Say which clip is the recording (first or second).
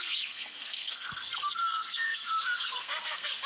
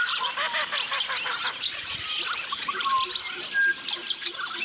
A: second